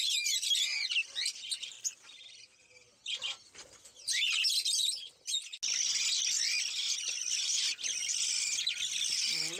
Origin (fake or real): real